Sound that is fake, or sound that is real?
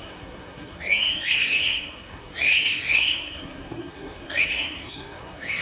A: fake